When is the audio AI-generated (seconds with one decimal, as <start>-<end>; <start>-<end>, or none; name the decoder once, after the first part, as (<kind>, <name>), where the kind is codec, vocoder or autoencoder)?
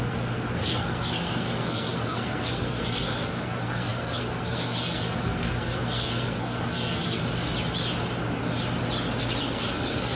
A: 0.0-7.2 (codec, SNAC); 9.4-10.1